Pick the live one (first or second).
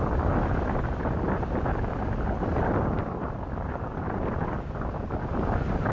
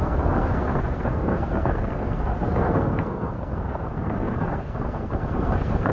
first